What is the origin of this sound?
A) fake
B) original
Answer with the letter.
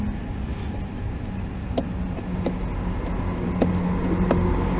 B